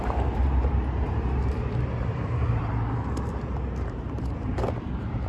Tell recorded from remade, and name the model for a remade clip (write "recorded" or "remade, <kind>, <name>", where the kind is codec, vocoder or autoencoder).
remade, vocoder, BigVGAN v2